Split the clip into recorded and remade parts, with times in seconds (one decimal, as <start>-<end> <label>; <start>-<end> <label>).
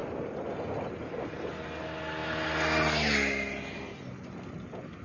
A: 0.0-5.0 recorded